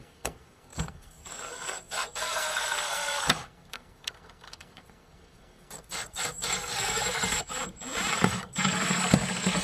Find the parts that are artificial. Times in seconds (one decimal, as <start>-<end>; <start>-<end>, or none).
0.0-7.6; 8.1-9.6